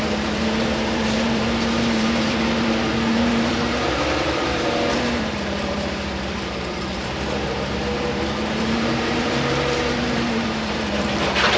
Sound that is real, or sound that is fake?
fake